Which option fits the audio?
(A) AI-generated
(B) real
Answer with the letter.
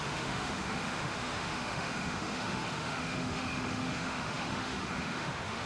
A